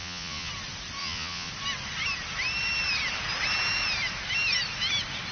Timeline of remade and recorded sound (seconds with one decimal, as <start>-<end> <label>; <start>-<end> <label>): 0.0-0.5 remade; 0.5-1.0 recorded; 1.0-1.5 remade; 1.5-5.3 recorded